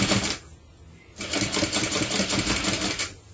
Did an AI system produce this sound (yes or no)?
no